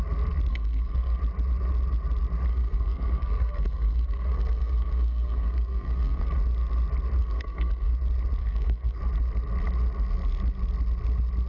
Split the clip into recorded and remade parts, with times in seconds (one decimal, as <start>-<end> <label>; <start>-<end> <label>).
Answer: 0.0-0.5 recorded; 0.5-1.2 remade; 1.2-2.5 recorded; 2.5-6.3 remade; 6.3-7.2 recorded; 7.2-7.9 remade; 7.9-8.4 recorded; 8.4-9.0 remade; 9.0-11.5 recorded